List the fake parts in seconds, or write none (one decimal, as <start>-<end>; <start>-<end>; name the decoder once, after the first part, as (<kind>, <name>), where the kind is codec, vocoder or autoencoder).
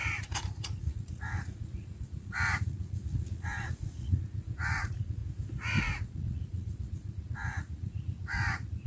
0.0-5.2 (vocoder, Vocos); 5.8-8.9